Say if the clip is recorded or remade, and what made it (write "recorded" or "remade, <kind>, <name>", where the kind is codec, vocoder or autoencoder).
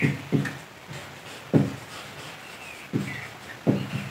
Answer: recorded